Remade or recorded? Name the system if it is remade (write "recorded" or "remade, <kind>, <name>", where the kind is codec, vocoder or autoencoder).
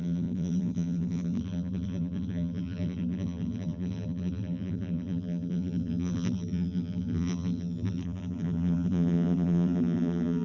remade, vocoder, BigVGAN v2